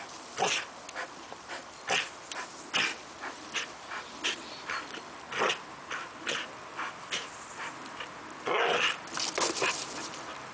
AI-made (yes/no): no